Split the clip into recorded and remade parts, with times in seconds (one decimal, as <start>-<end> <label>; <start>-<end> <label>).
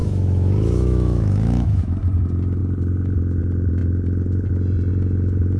0.0-2.0 remade; 2.0-5.6 recorded